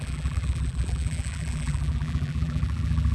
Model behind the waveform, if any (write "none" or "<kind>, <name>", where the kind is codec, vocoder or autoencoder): vocoder, BigVGAN v2